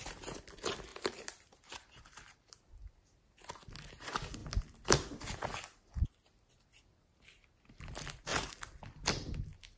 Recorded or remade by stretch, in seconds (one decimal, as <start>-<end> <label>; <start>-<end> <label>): 0.0-0.9 recorded; 0.9-2.7 remade; 2.7-9.8 recorded